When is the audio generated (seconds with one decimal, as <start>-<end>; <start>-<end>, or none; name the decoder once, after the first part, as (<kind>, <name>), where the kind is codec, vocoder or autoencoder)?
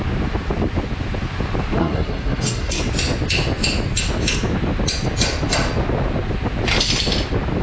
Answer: 1.8-2.8 (codec, SNAC)